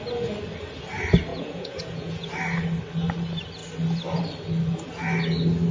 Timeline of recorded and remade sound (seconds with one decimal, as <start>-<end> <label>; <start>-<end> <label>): 0.0-1.3 recorded; 1.3-2.3 remade; 2.3-5.7 recorded